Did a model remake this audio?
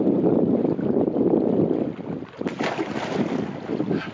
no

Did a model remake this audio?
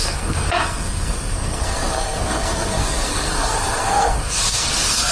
yes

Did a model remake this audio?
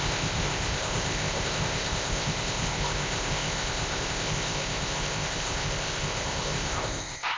yes